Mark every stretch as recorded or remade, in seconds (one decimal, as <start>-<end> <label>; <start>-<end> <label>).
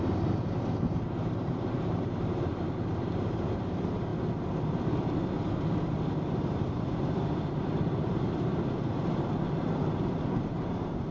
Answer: 0.0-4.1 remade; 4.1-6.3 recorded; 6.3-11.1 remade